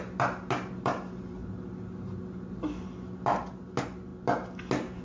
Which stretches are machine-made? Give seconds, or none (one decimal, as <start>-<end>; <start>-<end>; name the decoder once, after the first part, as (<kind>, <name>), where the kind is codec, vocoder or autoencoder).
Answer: none